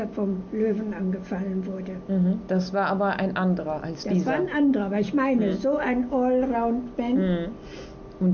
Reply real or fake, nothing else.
real